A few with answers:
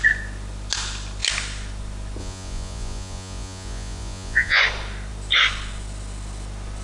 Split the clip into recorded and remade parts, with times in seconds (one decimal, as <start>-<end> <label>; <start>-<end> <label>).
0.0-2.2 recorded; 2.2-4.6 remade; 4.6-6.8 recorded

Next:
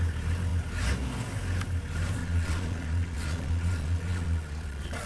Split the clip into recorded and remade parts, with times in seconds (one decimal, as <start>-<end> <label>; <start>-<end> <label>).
0.0-2.2 recorded; 2.2-5.1 remade

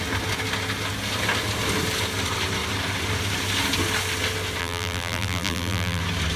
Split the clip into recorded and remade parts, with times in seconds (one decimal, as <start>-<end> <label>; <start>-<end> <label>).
0.0-4.6 recorded; 4.6-6.0 remade; 6.0-6.4 recorded